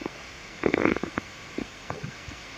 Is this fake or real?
fake